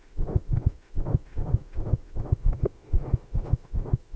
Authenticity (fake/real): fake